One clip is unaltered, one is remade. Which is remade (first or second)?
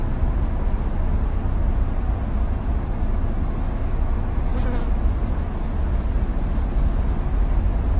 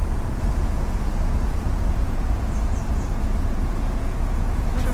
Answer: second